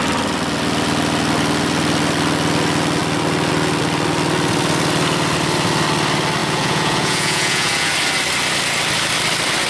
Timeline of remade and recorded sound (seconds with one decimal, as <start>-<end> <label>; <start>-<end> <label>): 0.0-6.4 recorded; 6.4-7.9 remade; 7.9-9.7 recorded